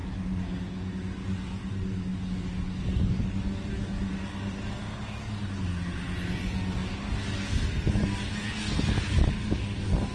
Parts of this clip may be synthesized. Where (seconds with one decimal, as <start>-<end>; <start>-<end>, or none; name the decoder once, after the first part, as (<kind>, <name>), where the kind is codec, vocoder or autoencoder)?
none